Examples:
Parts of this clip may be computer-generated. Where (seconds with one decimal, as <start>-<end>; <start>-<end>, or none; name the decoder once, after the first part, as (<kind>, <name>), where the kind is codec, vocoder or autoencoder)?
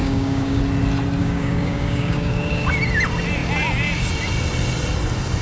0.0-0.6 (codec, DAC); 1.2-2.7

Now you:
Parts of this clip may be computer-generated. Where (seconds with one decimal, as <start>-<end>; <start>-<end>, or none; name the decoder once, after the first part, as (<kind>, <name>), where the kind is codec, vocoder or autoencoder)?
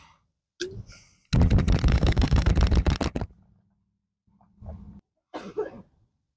1.9-2.5 (codec, SNAC)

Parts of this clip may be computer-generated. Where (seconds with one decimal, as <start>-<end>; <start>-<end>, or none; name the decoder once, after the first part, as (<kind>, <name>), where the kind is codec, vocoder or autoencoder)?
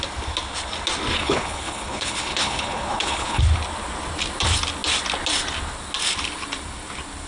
1.2-3.4 (codec, HILCodec)